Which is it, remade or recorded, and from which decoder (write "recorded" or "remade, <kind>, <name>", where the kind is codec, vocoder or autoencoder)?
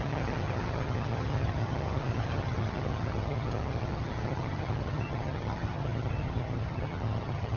remade, vocoder, HiFi-GAN